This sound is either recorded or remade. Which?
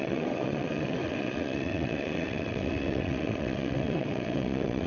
remade